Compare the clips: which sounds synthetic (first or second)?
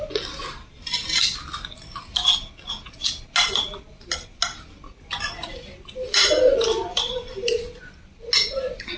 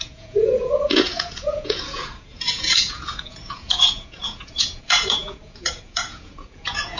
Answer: second